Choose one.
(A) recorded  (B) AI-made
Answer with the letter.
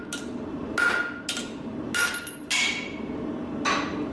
A